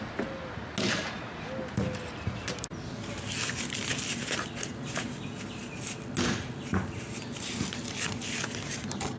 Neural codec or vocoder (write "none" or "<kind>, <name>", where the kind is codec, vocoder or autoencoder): none